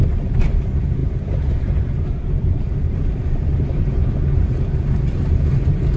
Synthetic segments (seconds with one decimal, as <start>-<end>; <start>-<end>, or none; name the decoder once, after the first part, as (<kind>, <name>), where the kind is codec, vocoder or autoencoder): 0.0-6.0 (vocoder, BigVGAN v2)